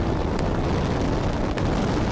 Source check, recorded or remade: recorded